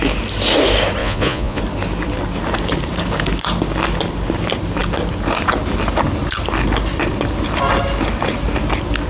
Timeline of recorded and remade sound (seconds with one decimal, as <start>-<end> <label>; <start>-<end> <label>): 0.0-1.0 recorded; 1.0-1.6 remade; 1.6-9.1 recorded